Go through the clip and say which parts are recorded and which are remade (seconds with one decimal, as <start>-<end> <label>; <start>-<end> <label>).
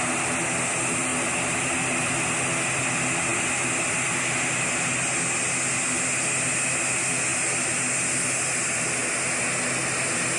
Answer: 0.0-10.4 recorded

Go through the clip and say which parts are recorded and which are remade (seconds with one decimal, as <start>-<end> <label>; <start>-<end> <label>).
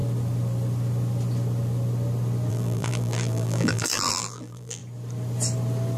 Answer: 0.0-2.5 recorded; 2.5-4.8 remade; 4.8-6.0 recorded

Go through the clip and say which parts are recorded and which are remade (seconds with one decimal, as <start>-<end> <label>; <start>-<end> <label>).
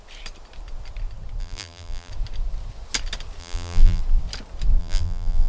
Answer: 0.0-1.4 recorded; 1.4-2.1 remade; 2.1-3.4 recorded; 3.4-4.0 remade; 4.0-4.8 recorded; 4.8-5.5 remade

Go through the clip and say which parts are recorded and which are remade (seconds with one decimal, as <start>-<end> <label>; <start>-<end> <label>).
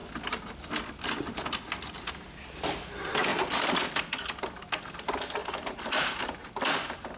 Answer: 0.0-5.4 recorded; 5.4-6.5 remade; 6.5-7.2 recorded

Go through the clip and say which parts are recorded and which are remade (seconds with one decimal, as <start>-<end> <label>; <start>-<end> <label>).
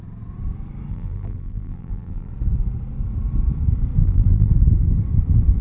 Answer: 0.0-0.9 recorded; 0.9-2.3 remade; 2.3-4.0 recorded; 4.0-4.5 remade; 4.5-5.6 recorded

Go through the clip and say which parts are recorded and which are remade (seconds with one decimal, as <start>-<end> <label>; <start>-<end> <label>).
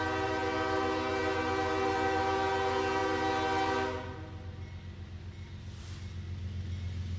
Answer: 0.0-7.2 recorded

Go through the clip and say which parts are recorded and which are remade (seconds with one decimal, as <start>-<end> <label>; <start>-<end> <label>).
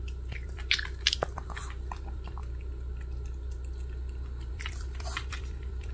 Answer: 0.0-2.4 remade; 2.4-4.5 recorded; 4.5-5.9 remade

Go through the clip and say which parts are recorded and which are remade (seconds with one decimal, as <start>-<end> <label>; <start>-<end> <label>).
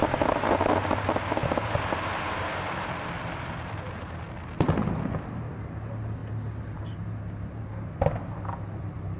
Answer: 0.0-9.2 recorded